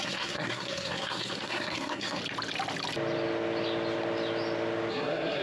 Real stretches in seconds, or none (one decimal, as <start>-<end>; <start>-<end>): 2.2-4.9